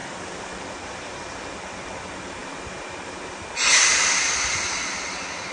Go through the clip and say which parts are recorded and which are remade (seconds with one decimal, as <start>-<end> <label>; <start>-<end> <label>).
0.0-5.5 recorded